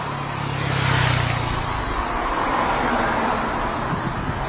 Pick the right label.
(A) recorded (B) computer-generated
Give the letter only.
A